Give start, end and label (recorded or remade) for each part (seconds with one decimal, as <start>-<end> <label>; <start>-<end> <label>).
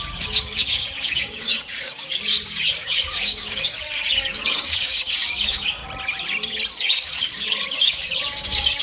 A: 0.0-5.8 remade; 5.8-6.8 recorded; 6.8-8.8 remade